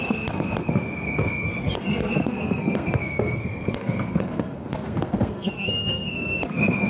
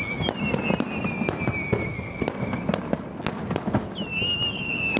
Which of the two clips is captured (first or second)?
second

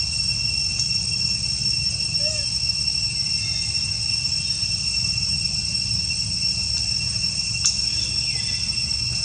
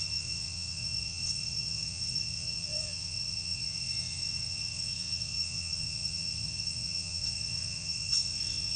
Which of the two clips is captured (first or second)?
first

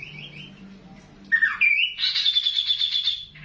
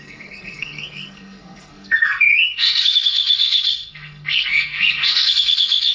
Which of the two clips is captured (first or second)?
first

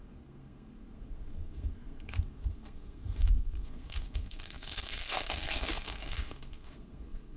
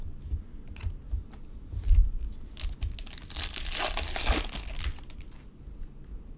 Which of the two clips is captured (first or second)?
second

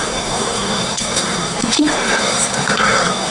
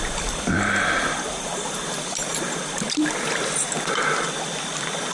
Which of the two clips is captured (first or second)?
second